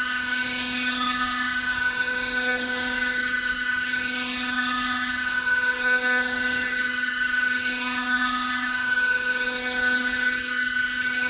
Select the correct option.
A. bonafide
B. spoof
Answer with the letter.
B